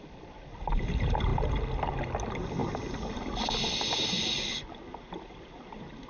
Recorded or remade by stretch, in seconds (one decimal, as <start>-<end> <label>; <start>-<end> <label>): 0.0-6.1 recorded